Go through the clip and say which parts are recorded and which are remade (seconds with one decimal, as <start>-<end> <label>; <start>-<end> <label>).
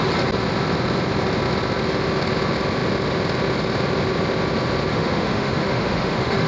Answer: 0.0-4.9 recorded; 4.9-6.5 remade